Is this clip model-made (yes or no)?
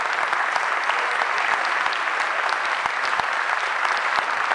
no